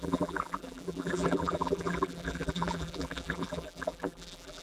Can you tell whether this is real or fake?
fake